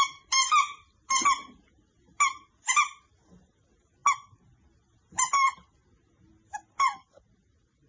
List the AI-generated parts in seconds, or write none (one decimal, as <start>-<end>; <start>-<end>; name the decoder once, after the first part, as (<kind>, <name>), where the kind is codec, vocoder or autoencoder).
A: none

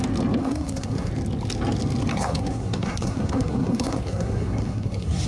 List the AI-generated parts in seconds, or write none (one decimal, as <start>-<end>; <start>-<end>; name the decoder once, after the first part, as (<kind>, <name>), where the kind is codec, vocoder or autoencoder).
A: 0.4-1.1 (codec, SNAC); 2.1-5.3

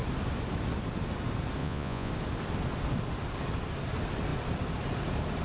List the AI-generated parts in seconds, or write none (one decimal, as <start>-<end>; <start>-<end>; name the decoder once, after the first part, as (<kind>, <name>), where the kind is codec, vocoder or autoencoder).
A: 1.6-2.1 (vocoder, Vocos)

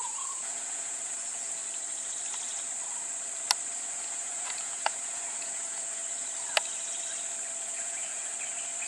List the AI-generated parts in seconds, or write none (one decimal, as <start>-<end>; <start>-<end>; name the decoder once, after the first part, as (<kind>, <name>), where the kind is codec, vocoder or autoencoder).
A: 0.0-1.6 (vocoder, Vocos); 3.9-6.0; 7.6-8.3